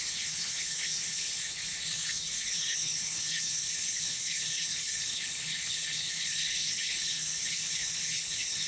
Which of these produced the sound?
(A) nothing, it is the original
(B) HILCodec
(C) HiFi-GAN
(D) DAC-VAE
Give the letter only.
B